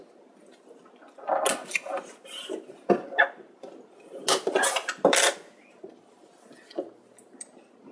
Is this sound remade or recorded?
recorded